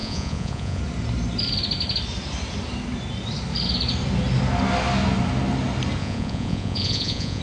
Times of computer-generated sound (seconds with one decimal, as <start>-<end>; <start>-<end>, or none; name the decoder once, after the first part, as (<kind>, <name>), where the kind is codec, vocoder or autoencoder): 0.0-0.8 (vocoder, Vocos); 6.0-7.4